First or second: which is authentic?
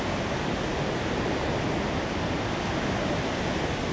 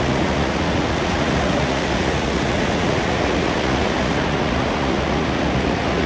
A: first